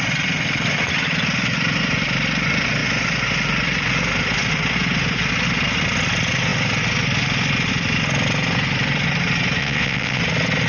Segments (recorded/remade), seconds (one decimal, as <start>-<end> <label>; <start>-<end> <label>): 0.0-9.6 recorded; 9.6-10.2 remade; 10.2-10.7 recorded